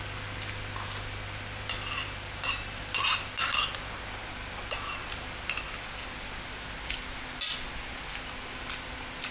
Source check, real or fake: real